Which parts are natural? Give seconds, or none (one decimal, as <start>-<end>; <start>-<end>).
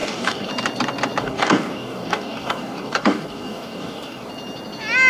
0.5-1.2; 4.3-5.1